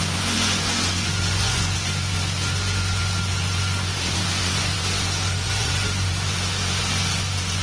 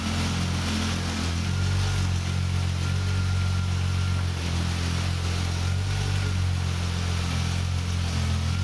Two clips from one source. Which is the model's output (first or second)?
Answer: first